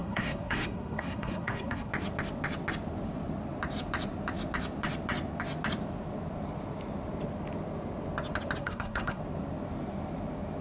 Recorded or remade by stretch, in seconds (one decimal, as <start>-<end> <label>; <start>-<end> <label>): 0.0-1.9 remade; 1.9-8.6 recorded; 8.6-9.2 remade; 9.2-10.6 recorded